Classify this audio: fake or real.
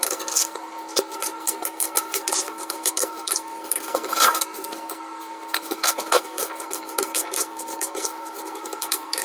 fake